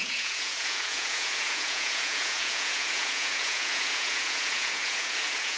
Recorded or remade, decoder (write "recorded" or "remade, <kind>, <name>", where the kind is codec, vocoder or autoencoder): remade, vocoder, Vocos